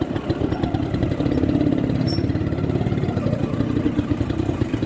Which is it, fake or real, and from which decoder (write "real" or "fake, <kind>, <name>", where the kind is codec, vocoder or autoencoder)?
fake, vocoder, BigVGAN v2